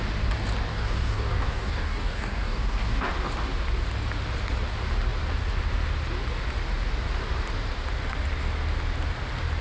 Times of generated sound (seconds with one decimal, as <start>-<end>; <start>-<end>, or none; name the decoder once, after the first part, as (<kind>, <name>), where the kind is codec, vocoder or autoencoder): 0.7-3.1 (codec, DAC)